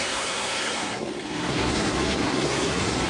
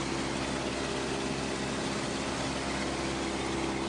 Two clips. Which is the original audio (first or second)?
second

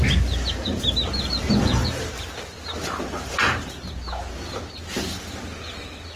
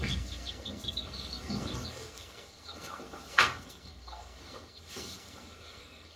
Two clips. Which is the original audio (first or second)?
first